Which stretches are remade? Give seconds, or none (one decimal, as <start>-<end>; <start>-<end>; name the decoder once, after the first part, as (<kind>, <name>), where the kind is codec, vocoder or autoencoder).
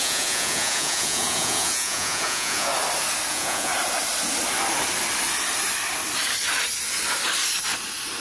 0.0-2.7 (vocoder, Vocos); 3.3-3.7